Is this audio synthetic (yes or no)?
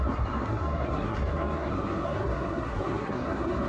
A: yes